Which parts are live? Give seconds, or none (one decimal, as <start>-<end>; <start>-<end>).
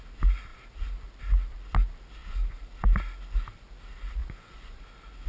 0.0-4.2; 4.8-5.3